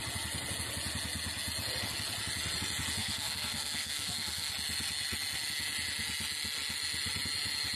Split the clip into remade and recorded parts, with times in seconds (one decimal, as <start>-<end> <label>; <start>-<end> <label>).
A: 0.0-3.0 recorded; 3.0-4.5 remade; 4.5-7.8 recorded